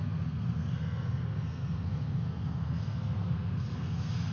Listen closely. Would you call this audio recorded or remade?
remade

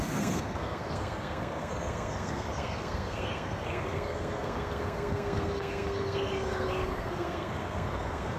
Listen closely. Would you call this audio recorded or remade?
remade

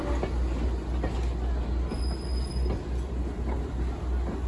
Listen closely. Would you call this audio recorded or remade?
recorded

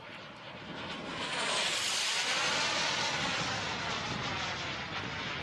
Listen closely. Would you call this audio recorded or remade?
recorded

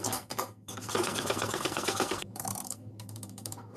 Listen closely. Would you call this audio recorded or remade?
remade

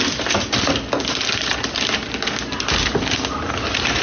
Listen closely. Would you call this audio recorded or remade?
recorded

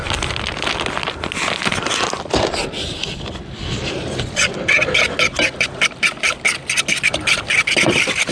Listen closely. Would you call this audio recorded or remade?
recorded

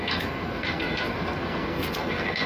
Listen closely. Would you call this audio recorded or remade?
remade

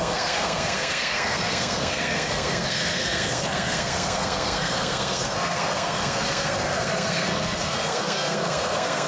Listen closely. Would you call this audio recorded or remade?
remade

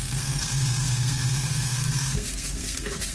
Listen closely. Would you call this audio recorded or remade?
remade